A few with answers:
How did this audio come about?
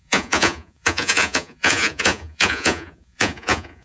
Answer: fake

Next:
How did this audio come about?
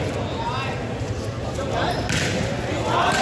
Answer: real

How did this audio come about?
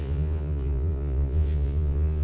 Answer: fake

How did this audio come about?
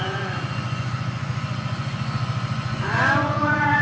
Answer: fake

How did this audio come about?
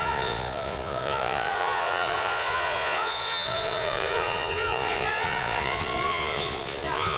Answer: fake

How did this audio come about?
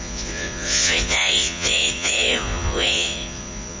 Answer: fake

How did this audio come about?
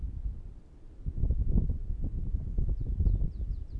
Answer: real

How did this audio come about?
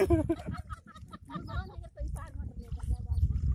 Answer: real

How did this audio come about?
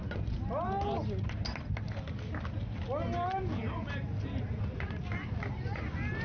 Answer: real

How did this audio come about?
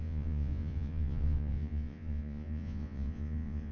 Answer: fake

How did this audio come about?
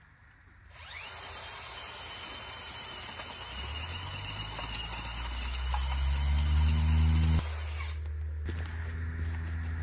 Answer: real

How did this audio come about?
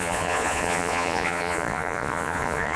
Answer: fake